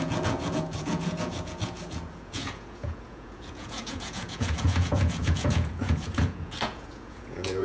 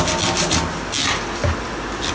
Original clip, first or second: second